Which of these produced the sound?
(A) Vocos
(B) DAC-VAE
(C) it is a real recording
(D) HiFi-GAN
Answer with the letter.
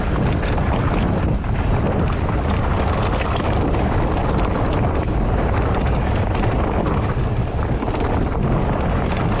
C